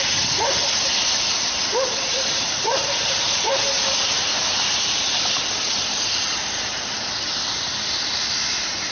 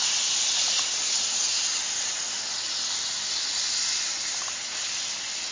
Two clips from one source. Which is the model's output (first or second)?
first